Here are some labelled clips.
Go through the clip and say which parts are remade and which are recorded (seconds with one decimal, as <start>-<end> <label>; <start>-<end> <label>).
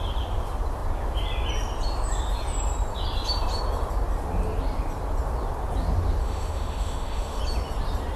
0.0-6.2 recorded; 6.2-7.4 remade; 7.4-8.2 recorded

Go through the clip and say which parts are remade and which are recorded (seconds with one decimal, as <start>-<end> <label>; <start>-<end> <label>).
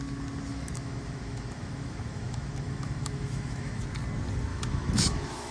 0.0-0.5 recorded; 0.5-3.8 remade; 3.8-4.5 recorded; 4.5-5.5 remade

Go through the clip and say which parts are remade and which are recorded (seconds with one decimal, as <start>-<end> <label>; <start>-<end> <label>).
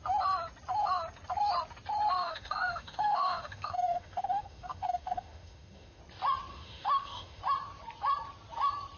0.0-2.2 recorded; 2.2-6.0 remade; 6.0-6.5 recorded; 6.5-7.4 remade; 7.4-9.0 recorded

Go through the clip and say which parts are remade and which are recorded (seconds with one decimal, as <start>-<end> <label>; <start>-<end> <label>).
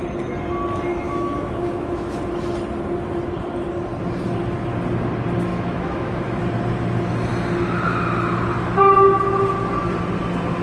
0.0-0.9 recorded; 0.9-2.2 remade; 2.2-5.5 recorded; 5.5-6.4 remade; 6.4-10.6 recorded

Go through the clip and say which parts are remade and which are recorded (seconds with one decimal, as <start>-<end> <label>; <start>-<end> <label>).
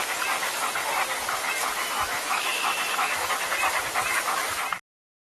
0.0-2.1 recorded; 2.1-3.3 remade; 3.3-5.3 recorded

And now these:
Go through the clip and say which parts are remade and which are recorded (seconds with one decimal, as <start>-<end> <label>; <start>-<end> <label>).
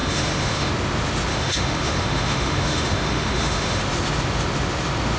0.0-0.7 remade; 0.7-1.3 recorded; 1.3-3.8 remade; 3.8-5.2 recorded